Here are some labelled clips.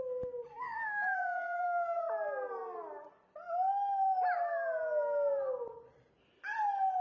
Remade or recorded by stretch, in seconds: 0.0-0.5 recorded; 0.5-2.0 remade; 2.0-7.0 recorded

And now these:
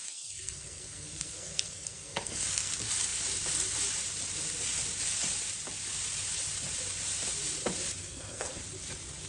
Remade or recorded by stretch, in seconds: 0.0-2.7 remade; 2.7-8.0 recorded; 8.0-8.6 remade; 8.6-9.3 recorded

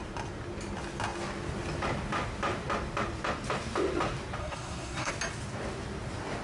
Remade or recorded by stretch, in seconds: 0.0-4.4 recorded; 4.4-5.1 remade; 5.1-6.4 recorded

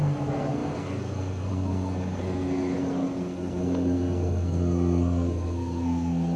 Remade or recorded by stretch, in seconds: 0.0-6.4 remade

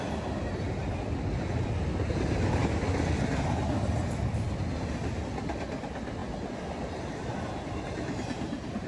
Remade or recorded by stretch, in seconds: 0.0-8.9 recorded

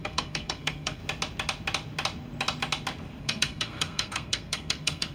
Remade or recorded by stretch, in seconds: 0.0-1.0 remade; 1.0-3.2 recorded; 3.2-5.1 remade

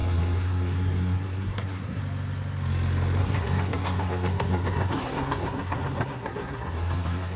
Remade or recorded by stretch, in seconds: 0.0-2.0 remade; 2.0-3.2 recorded; 3.2-7.4 remade

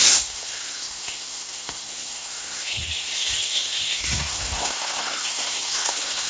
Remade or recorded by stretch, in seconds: 0.0-6.3 remade